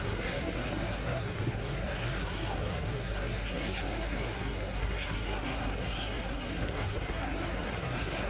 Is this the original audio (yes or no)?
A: no